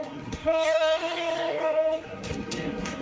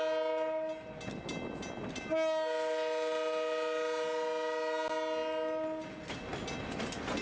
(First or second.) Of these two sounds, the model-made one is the first